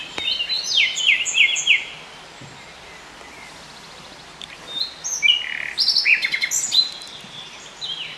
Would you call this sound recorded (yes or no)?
yes